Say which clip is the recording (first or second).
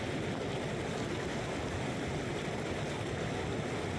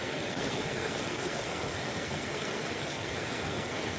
first